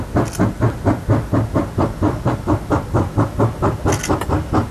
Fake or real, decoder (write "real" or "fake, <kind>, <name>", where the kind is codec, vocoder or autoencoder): real